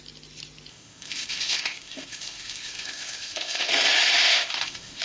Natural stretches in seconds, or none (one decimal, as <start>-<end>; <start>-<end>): 0.0-0.7; 3.7-4.2